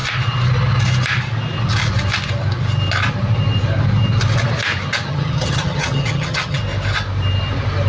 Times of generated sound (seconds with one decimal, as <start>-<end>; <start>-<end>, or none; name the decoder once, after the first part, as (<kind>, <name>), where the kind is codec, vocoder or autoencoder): 5.1-6.6 (vocoder, HiFi-GAN)